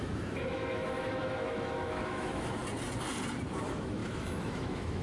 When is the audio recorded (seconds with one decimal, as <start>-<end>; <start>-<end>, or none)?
2.6-3.6